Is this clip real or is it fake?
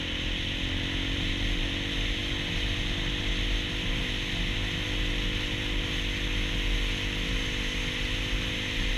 real